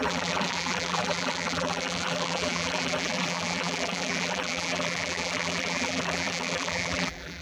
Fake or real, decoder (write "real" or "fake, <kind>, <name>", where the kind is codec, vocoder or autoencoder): fake, vocoder, BigVGAN v2